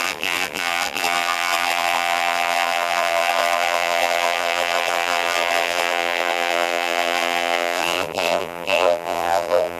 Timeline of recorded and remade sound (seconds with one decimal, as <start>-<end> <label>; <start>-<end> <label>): 0.0-9.8 remade